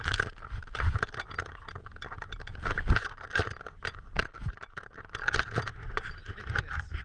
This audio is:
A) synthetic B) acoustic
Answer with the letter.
A